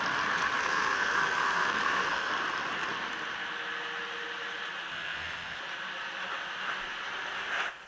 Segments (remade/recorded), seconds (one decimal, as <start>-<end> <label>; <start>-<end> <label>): 0.0-0.6 recorded; 0.6-2.3 remade; 2.3-4.9 recorded; 4.9-5.6 remade; 5.6-7.9 recorded